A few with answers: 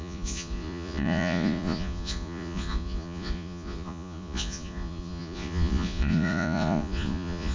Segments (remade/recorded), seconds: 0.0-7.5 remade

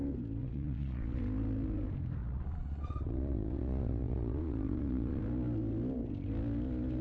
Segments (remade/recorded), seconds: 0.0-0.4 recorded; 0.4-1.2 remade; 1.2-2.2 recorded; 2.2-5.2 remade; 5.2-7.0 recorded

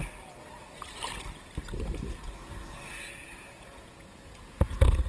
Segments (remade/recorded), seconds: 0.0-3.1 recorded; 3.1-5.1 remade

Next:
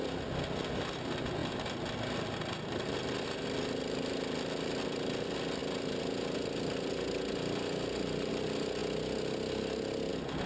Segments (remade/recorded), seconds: 0.0-10.5 recorded

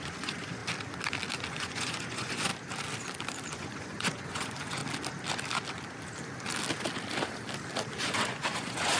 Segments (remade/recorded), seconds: 0.0-0.6 remade; 0.6-1.5 recorded; 1.5-2.5 remade; 2.5-3.5 recorded; 3.5-4.8 remade; 4.8-8.0 recorded; 8.0-9.0 remade